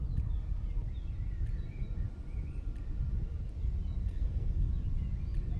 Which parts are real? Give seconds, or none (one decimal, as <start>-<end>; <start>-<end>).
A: 0.0-4.0; 4.7-5.6